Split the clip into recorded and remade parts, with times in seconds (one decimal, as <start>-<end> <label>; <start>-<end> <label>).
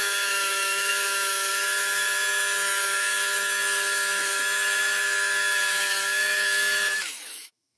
0.0-7.8 remade